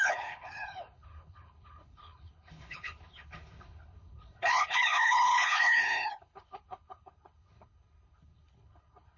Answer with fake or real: fake